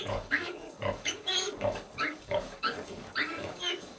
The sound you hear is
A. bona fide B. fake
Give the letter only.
B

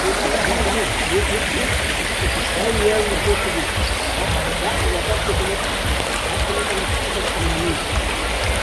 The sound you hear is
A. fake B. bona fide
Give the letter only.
B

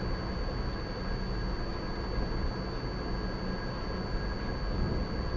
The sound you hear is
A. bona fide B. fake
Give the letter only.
A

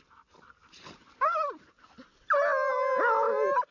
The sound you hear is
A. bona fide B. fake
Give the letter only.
A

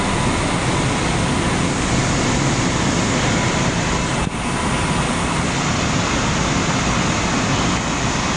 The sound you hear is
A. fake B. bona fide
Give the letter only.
B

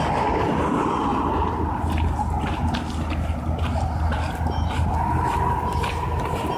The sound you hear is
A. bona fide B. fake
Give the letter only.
A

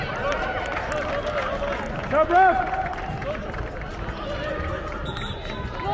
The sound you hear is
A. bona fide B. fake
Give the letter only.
A